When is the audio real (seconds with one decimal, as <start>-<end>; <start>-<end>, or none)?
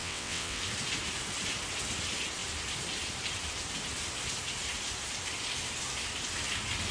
0.6-6.9